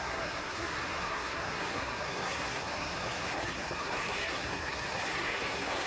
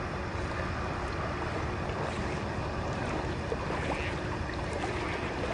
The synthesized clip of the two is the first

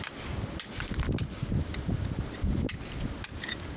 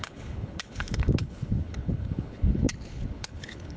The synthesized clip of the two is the second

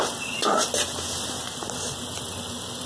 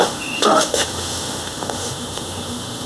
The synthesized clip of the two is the second